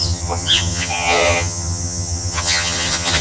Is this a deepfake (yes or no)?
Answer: yes